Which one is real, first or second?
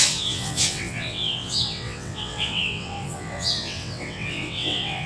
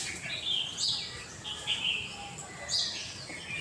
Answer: second